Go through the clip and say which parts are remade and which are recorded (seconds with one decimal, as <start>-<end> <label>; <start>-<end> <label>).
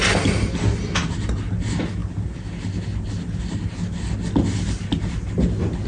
0.0-5.9 recorded